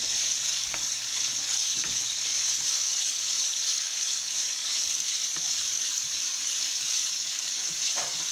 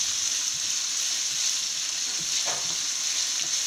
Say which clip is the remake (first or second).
first